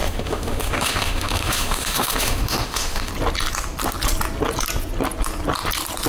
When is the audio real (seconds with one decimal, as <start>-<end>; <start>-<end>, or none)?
3.1-6.1

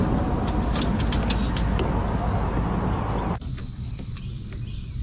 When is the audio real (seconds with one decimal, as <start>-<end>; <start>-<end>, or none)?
0.0-3.6; 4.2-5.0